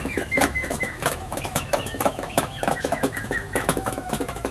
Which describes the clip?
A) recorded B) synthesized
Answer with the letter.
B